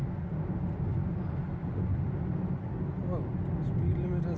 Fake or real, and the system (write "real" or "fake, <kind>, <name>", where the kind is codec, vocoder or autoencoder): real